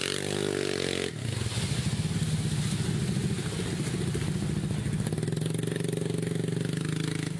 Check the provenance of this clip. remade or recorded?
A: recorded